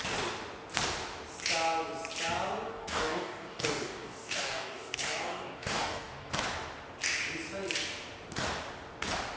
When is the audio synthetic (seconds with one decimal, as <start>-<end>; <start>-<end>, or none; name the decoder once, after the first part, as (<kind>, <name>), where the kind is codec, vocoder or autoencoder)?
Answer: 2.7-6.3 (codec, DAC)